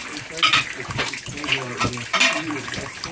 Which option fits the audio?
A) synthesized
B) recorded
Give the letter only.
B